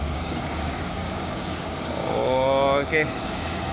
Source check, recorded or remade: remade